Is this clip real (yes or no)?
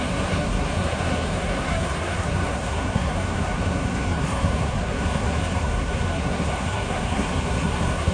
no